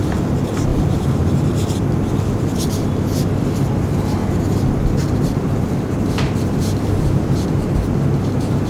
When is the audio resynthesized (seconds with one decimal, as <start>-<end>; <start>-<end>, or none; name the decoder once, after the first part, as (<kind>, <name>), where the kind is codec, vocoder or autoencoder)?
0.7-2.7 (vocoder, BigVGAN v2); 4.2-7.7